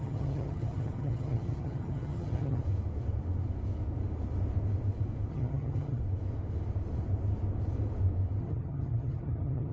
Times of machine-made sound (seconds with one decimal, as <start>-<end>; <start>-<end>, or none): 0.0-2.6; 5.3-6.0; 8.4-9.7